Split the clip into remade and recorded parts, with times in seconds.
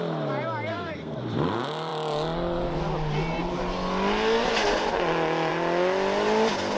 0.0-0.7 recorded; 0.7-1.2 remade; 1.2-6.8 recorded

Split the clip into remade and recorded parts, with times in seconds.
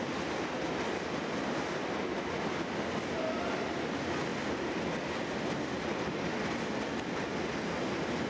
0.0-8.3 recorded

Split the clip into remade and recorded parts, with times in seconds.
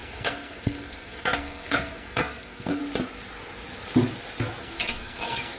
0.0-2.8 remade; 2.8-4.6 recorded; 4.6-5.6 remade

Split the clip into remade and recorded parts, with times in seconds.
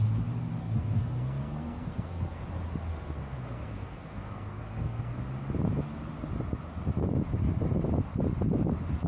0.0-0.6 recorded; 0.6-2.4 remade; 2.4-2.9 recorded; 2.9-5.2 remade; 5.2-9.1 recorded